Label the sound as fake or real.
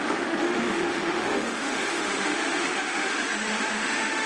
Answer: fake